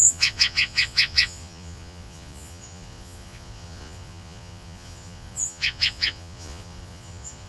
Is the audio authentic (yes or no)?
no